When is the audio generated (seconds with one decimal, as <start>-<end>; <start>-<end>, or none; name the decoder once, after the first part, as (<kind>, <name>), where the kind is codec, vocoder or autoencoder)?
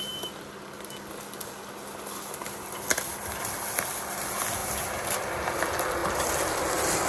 none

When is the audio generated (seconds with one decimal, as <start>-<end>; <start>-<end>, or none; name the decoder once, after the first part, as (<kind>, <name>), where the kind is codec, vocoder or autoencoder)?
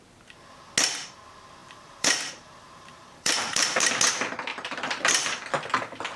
1.6-3.9 (vocoder, BigVGAN v2); 4.5-5.1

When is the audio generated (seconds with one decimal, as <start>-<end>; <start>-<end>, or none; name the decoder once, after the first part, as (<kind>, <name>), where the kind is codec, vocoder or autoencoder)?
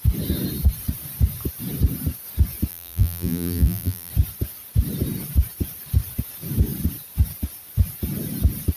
2.7-4.1 (vocoder, BigVGAN v2)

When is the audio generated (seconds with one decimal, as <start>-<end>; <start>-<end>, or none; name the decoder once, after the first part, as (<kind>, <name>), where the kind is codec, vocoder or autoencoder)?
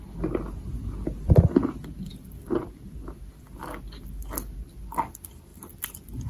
none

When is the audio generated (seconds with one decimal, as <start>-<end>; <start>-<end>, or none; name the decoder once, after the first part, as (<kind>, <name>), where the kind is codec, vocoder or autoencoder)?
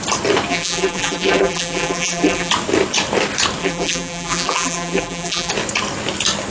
0.5-2.5 (vocoder, BigVGAN v2); 3.6-5.5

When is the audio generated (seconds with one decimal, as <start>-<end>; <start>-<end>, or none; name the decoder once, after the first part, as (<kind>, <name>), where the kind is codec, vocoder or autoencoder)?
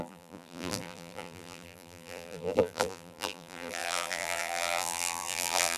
0.0-5.8 (vocoder, BigVGAN v2)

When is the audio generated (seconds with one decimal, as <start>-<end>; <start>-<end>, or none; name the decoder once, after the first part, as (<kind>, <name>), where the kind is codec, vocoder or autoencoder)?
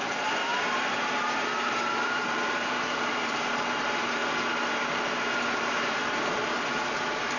0.0-4.2 (vocoder, BigVGAN v2); 5.5-7.4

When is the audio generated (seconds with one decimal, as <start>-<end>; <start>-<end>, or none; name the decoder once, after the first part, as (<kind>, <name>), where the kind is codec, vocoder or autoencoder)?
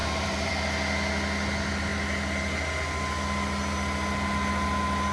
0.0-0.5 (vocoder, BigVGAN v2)